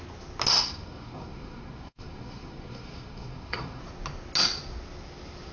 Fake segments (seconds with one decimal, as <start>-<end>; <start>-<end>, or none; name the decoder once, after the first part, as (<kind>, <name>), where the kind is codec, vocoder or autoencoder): 0.5-3.8 (codec, SNAC)